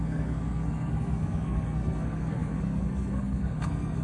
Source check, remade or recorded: remade